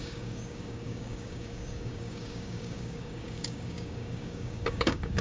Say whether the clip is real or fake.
fake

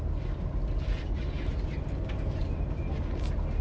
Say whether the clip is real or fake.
real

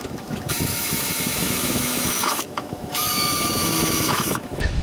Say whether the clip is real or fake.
fake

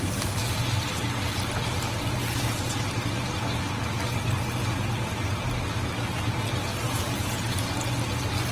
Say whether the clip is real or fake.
real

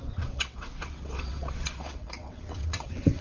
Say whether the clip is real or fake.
fake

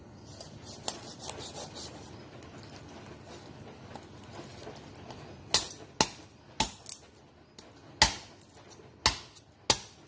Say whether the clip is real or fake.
real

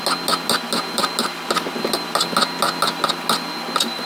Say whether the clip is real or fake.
real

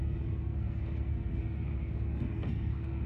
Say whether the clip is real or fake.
fake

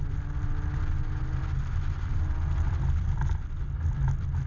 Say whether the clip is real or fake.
real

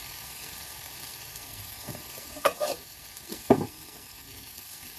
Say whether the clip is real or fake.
fake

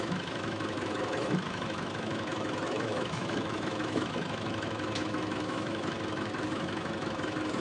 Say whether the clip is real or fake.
fake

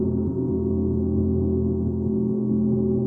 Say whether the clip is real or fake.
real